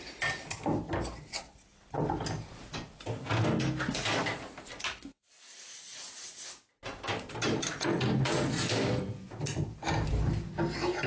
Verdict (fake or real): real